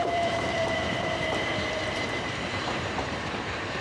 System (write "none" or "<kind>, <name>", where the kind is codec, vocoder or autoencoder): vocoder, BigVGAN v2